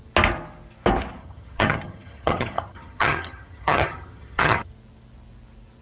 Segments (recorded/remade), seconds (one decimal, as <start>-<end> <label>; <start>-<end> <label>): 0.0-1.2 recorded; 1.2-4.7 remade; 4.7-5.8 recorded